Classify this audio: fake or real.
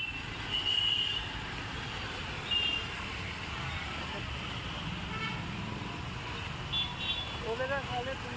real